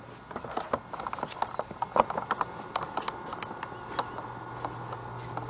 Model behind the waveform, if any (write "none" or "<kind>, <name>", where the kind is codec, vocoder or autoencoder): none